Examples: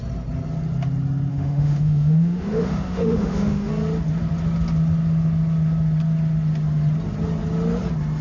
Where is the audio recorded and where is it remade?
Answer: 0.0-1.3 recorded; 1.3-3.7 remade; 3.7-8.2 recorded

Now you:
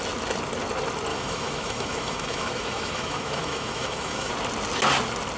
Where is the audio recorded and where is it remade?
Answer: 0.0-1.1 recorded; 1.1-4.3 remade; 4.3-5.4 recorded

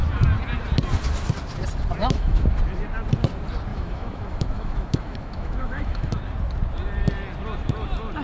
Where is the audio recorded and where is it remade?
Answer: 0.0-2.0 recorded; 2.0-2.5 remade; 2.5-3.7 recorded; 3.7-6.1 remade; 6.1-8.2 recorded

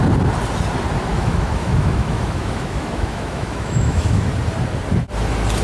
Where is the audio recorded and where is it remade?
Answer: 0.0-1.1 recorded; 1.1-4.3 remade; 4.3-5.6 recorded

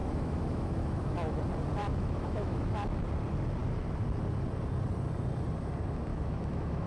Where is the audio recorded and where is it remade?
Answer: 0.0-1.4 remade; 1.4-1.8 recorded; 1.8-3.1 remade; 3.1-6.1 recorded; 6.1-6.9 remade